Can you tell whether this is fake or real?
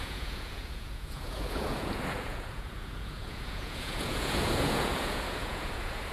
fake